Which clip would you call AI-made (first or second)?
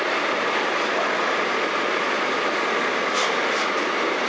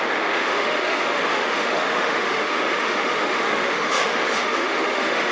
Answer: second